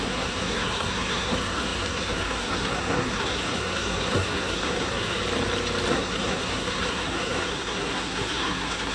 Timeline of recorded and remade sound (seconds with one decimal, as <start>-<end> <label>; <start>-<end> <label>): 0.0-5.2 remade; 5.2-5.9 recorded; 5.9-8.9 remade